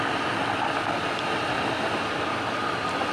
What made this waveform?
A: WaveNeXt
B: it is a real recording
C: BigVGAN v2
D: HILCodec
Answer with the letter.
B